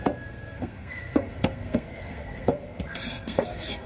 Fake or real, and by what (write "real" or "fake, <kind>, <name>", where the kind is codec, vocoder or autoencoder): fake, codec, SNAC